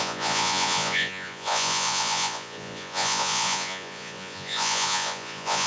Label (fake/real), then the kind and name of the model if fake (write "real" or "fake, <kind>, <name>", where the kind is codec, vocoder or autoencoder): fake, vocoder, Vocos